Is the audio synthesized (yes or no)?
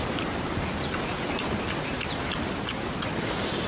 no